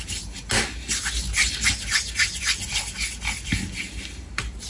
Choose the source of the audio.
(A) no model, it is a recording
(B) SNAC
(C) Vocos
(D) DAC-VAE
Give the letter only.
A